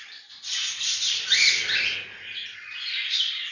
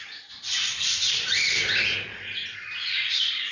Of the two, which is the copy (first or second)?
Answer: second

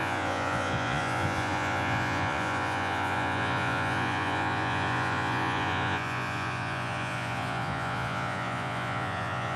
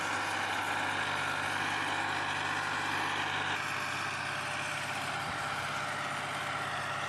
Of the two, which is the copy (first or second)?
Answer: first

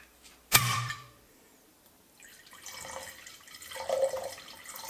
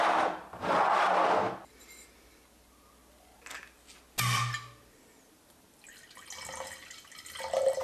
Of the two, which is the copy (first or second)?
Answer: first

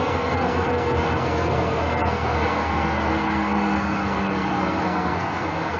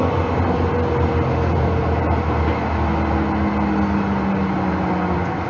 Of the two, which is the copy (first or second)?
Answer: first